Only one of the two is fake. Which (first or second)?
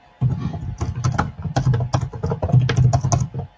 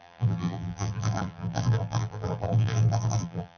second